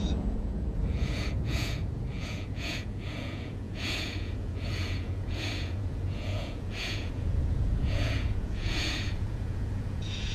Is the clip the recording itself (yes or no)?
no